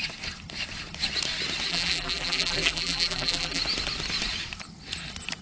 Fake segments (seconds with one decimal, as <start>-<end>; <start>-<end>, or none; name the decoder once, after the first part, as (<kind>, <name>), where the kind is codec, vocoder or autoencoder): 1.7-3.6 (vocoder, BigVGAN v2)